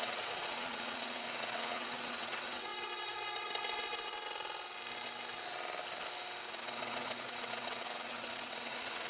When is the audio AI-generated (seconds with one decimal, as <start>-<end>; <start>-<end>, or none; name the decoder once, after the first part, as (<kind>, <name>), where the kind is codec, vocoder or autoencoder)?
0.0-2.7 (vocoder, WaveNeXt); 6.4-9.1